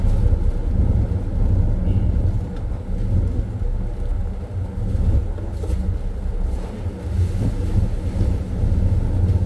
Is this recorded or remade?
recorded